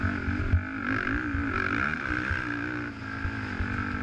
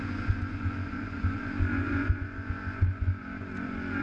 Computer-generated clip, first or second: second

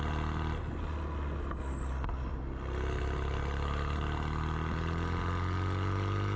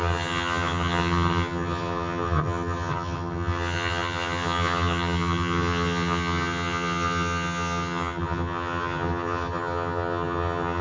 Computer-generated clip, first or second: second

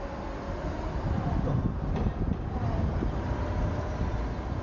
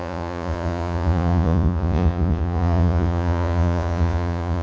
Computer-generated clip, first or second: second